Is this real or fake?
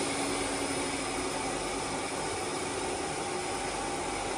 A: real